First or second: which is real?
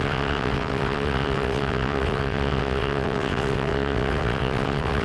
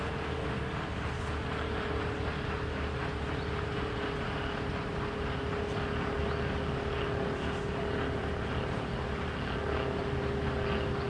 second